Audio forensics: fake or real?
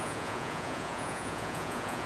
fake